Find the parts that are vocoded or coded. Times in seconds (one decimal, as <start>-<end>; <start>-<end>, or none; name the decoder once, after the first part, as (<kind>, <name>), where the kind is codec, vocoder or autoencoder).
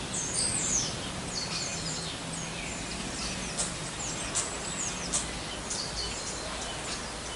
none